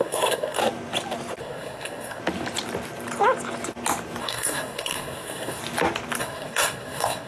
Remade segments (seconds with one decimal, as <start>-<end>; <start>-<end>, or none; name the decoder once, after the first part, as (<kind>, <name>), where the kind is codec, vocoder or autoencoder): 0.0-0.6 (codec, SNAC); 1.4-2.2; 4.2-5.6; 6.2-7.3